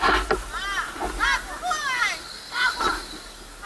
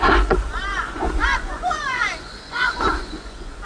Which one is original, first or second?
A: first